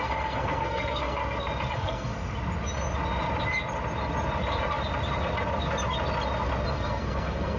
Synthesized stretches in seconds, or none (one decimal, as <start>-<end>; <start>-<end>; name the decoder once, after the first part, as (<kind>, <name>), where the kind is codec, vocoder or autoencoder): 0.0-1.2 (codec, SNAC); 1.7-2.1; 6.7-7.6